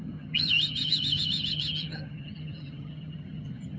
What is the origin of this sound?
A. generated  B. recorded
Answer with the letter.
A